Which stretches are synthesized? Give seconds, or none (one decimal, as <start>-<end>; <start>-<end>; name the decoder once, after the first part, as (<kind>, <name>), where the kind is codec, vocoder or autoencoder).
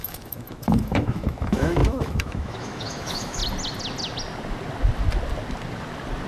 0.0-3.4 (autoencoder, DAC-VAE)